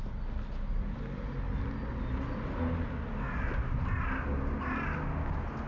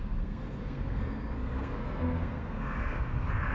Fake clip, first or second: second